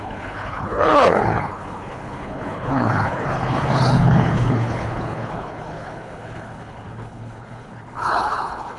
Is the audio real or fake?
fake